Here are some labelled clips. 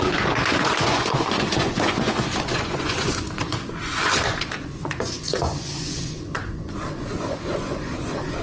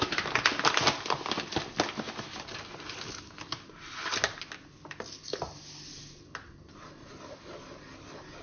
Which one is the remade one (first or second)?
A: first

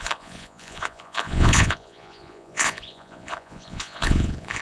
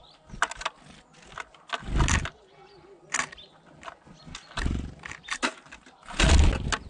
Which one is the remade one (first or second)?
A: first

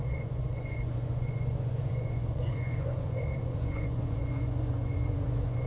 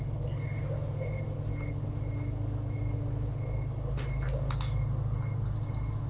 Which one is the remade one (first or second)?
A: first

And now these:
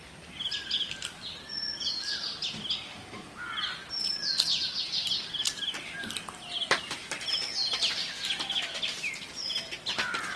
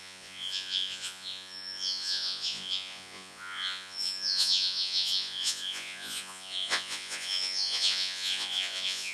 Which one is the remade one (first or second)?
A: second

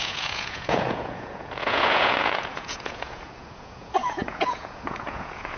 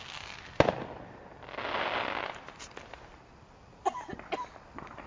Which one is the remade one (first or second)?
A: first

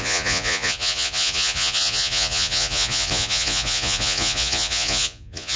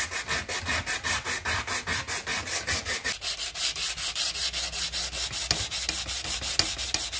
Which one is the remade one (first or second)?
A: first